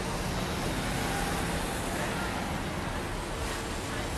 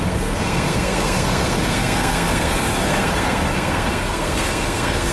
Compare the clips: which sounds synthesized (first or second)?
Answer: second